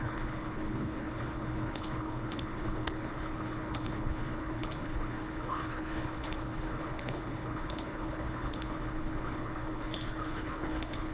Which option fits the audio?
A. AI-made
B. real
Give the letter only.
A